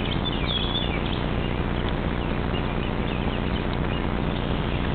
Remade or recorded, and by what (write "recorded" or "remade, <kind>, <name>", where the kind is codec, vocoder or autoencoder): recorded